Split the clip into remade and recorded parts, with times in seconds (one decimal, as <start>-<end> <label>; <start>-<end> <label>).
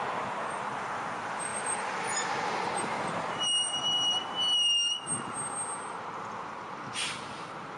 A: 0.0-7.8 recorded